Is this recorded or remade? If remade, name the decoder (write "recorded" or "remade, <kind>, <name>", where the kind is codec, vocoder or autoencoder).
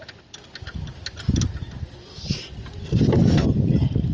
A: recorded